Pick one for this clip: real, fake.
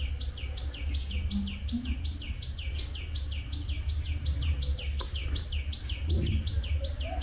real